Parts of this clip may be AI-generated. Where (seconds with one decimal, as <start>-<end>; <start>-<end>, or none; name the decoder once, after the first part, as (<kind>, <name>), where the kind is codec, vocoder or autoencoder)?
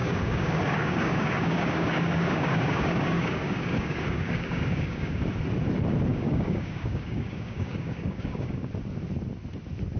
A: 0.0-5.2 (codec, DAC); 6.1-8.7